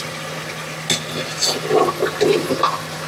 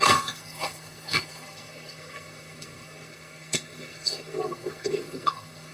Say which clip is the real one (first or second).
first